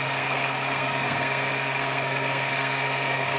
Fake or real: fake